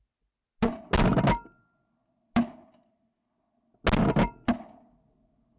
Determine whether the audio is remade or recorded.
recorded